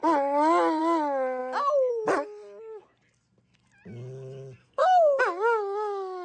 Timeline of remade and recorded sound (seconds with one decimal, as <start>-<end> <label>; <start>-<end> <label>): 0.0-4.6 recorded; 4.6-5.2 remade; 5.2-6.2 recorded